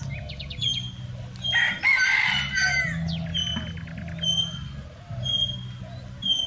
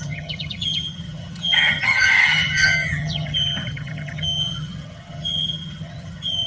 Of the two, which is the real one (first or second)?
first